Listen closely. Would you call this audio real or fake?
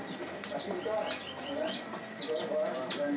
real